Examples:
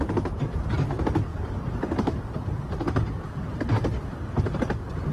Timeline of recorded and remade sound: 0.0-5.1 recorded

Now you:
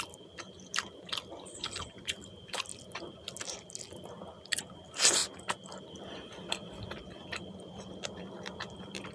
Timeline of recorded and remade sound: 0.0-2.7 remade; 2.7-4.6 recorded; 4.6-9.1 remade

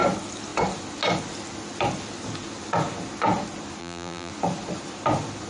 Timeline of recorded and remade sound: 0.0-3.8 recorded; 3.8-4.3 remade; 4.3-5.5 recorded

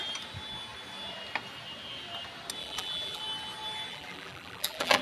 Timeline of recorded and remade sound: 0.0-2.6 recorded; 2.6-3.2 remade; 3.2-3.9 recorded; 3.9-5.0 remade

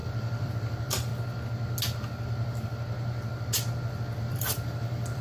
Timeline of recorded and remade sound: 0.0-1.1 remade; 1.1-4.2 recorded; 4.2-5.2 remade